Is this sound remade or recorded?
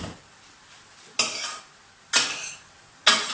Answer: recorded